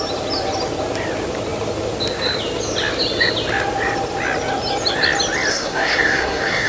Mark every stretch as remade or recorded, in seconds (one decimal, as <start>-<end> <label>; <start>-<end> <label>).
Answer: 0.0-5.5 recorded; 5.5-6.7 remade